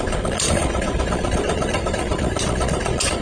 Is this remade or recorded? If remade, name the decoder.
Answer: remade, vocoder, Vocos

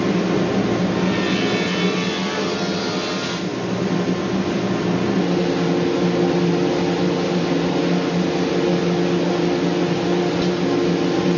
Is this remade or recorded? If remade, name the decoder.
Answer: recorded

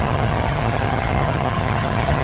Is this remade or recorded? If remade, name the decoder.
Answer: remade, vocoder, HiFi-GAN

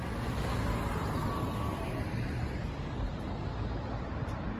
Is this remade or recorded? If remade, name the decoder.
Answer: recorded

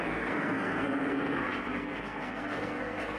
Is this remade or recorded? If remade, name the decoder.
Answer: remade, codec, SNAC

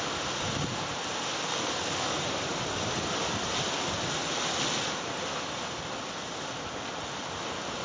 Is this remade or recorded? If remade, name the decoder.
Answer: recorded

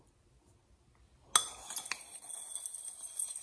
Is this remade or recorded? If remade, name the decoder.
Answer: recorded